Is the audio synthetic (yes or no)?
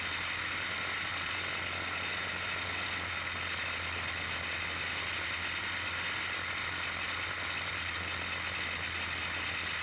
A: no